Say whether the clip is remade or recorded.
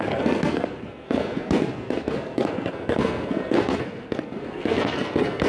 remade